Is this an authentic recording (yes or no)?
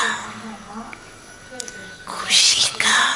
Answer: no